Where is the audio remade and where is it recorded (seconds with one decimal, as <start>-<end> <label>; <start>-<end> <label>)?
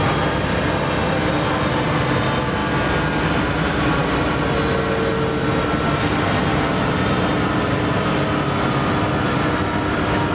0.0-10.3 recorded